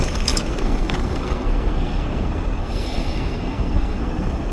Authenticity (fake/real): fake